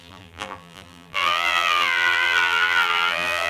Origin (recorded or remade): remade